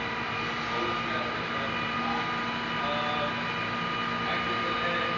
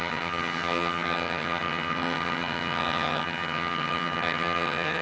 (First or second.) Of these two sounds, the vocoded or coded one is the second